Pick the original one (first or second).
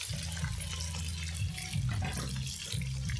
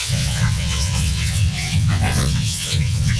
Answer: first